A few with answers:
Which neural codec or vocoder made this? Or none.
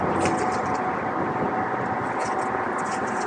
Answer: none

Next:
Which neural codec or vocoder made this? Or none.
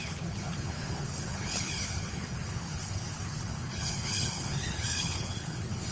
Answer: codec, HILCodec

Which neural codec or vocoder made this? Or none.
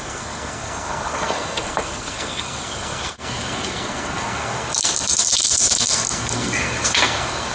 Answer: codec, SNAC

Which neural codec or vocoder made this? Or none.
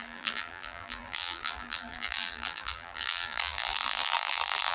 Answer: vocoder, BigVGAN v2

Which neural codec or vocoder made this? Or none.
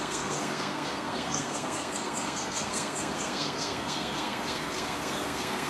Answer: codec, SNAC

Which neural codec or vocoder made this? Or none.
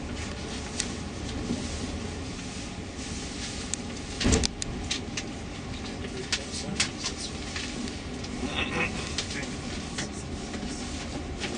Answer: none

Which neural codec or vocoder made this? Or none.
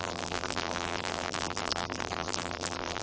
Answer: vocoder, BigVGAN v2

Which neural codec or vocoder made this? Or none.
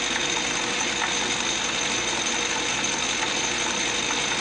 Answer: none